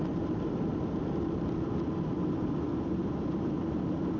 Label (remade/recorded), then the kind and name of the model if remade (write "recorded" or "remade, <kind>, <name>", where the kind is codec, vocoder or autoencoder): recorded